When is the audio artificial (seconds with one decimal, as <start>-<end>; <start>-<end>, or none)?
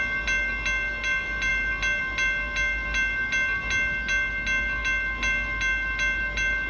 none